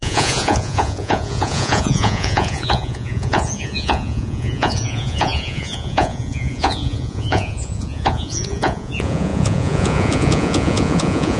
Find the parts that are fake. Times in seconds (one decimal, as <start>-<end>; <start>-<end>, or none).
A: 0.0-11.4